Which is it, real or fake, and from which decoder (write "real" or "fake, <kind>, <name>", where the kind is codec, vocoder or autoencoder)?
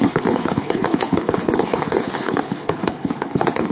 fake, codec, HILCodec